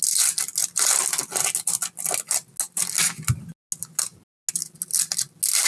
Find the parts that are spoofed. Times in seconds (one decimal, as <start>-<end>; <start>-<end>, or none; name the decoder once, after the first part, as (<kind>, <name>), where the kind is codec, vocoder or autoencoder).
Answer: none